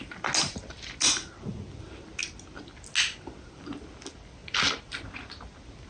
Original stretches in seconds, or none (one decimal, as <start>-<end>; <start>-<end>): 0.0-5.9